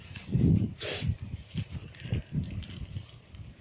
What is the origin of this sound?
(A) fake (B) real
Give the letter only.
A